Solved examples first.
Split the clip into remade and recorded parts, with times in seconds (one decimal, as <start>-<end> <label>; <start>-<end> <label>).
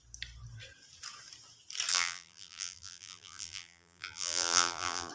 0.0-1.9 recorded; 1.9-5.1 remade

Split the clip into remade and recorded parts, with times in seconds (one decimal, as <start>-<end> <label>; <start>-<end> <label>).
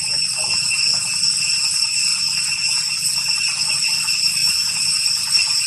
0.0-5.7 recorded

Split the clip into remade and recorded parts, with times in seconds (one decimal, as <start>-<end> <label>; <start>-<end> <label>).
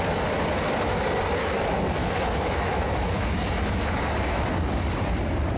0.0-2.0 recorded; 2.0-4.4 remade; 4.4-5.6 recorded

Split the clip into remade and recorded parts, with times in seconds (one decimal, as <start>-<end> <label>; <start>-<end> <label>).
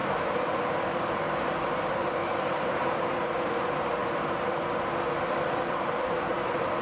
0.0-2.2 remade; 2.2-2.7 recorded; 2.7-4.0 remade; 4.0-5.7 recorded; 5.7-6.8 remade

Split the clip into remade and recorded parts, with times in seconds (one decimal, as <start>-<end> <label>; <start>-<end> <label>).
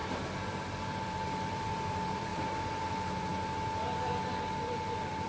0.0-0.8 recorded; 0.8-3.3 remade; 3.3-4.3 recorded; 4.3-5.3 remade